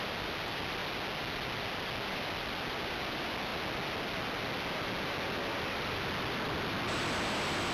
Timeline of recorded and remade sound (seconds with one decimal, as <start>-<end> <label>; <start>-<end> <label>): 0.0-7.7 recorded

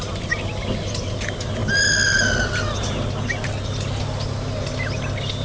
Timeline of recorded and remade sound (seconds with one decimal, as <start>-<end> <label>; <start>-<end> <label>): 0.0-5.4 recorded

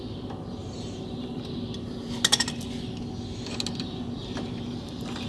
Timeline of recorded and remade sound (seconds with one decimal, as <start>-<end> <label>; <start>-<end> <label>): 0.0-0.6 recorded; 0.6-1.4 remade; 1.4-4.2 recorded; 4.2-5.3 remade

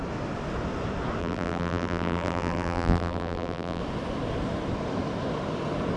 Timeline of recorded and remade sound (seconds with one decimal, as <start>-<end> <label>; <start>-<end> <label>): 0.0-1.2 recorded; 1.2-3.8 remade; 3.8-6.0 recorded

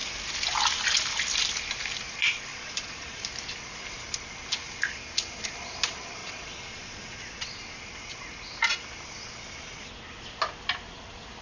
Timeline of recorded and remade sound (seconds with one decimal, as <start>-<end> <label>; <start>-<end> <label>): 0.0-2.5 recorded; 2.5-3.3 remade; 3.3-6.2 recorded; 6.2-7.5 remade; 7.5-11.4 recorded

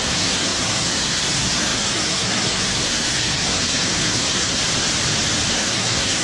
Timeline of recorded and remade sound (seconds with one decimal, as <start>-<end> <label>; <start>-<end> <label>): 0.0-4.6 remade; 4.6-5.5 recorded; 5.5-6.2 remade

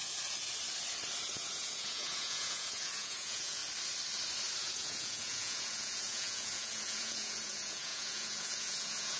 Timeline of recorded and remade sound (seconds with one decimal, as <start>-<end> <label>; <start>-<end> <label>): 0.0-1.3 recorded; 1.3-3.6 remade; 3.6-4.6 recorded; 4.6-9.2 remade

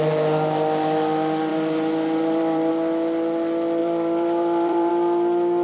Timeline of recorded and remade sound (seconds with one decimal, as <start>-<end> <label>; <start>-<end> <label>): 0.0-1.5 recorded; 1.5-2.7 remade; 2.7-3.8 recorded; 3.8-4.9 remade; 4.9-5.6 recorded